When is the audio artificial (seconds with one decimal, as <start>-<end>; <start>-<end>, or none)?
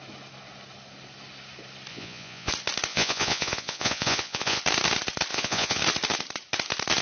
1.9-2.5; 2.9-4.6; 5.3-5.8